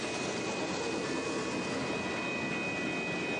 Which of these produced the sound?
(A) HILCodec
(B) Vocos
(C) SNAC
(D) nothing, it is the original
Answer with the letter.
D